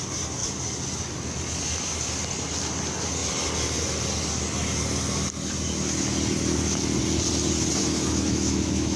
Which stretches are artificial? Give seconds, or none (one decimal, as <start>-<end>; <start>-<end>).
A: 7.8-9.0